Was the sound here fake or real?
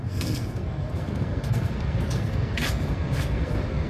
fake